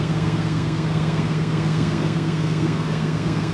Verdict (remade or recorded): remade